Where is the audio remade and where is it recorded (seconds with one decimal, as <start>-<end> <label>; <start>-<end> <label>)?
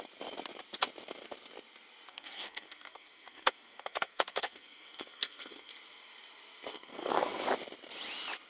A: 0.0-2.1 recorded; 2.1-5.7 remade; 5.7-6.7 recorded; 6.7-7.4 remade; 7.4-8.5 recorded